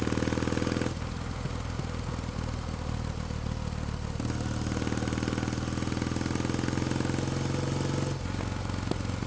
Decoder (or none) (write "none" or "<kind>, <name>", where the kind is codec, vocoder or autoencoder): none